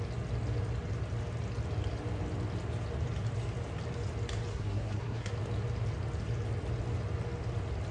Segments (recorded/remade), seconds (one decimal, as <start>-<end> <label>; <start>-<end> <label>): 0.0-4.5 recorded; 4.5-5.3 remade; 5.3-7.9 recorded